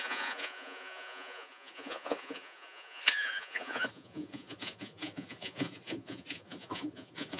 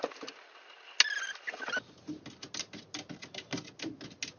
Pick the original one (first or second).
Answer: second